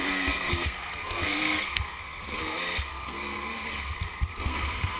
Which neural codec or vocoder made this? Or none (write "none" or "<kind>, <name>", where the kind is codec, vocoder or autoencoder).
codec, SNAC